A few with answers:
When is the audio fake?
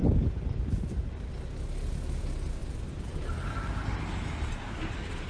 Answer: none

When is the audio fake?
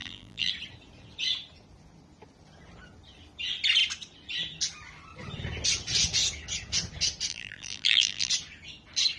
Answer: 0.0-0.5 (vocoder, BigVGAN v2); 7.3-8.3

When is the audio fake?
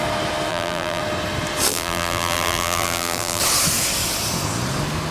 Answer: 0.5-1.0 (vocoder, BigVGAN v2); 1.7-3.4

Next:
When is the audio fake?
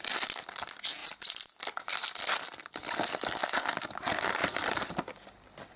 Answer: 1.0-2.6 (vocoder, BigVGAN v2); 4.4-5.8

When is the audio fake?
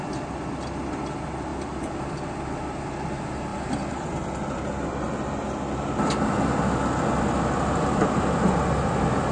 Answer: 1.5-2.1 (vocoder, BigVGAN v2); 3.5-4.9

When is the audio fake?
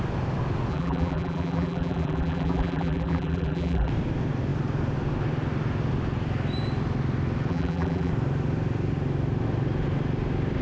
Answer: 0.7-3.9 (vocoder, BigVGAN v2); 7.5-8.1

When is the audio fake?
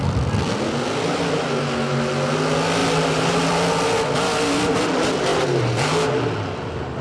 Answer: 5.3-5.9 (vocoder, BigVGAN v2)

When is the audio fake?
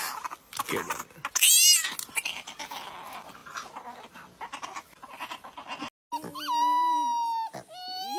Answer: none